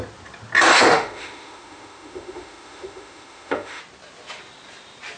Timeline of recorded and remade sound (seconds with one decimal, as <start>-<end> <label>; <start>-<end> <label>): 0.0-0.7 recorded; 0.7-3.8 remade; 3.8-5.2 recorded